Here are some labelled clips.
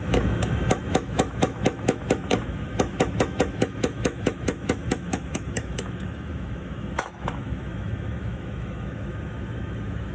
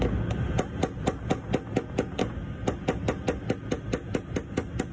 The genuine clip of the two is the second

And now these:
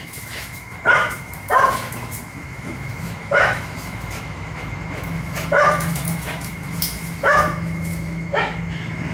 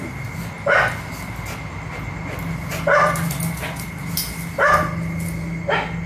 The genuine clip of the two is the second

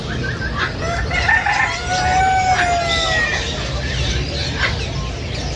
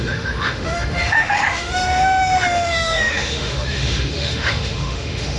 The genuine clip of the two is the first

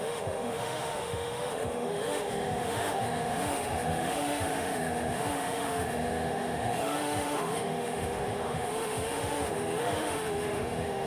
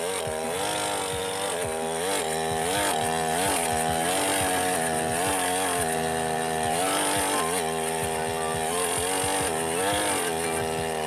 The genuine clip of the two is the second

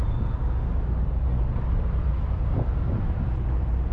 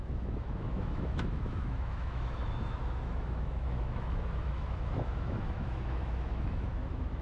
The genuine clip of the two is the first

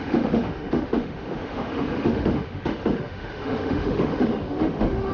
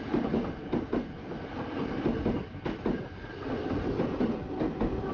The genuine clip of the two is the second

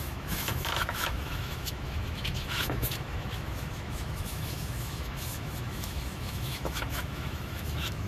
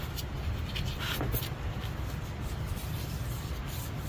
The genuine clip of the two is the second